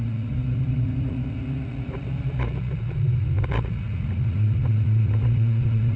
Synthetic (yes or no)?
yes